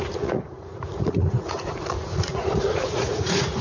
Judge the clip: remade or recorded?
remade